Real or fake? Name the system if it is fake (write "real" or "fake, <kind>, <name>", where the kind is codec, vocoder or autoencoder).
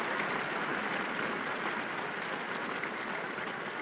real